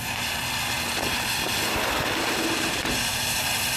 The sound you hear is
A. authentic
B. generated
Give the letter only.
A